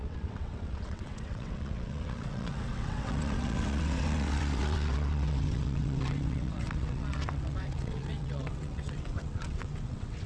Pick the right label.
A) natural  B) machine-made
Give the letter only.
B